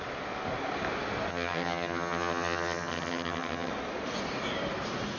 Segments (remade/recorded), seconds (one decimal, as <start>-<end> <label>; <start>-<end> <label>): 0.0-1.3 recorded; 1.3-3.7 remade; 3.7-5.2 recorded